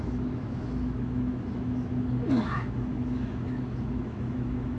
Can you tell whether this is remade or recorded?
remade